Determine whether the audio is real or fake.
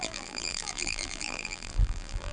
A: fake